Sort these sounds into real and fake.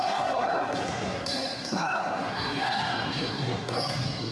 fake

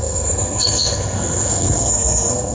fake